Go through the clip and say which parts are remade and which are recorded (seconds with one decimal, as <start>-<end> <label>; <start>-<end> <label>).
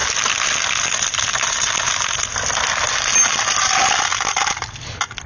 0.0-5.3 recorded